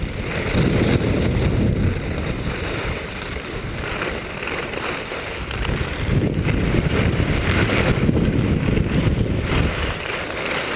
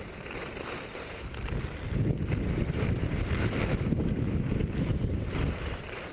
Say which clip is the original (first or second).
second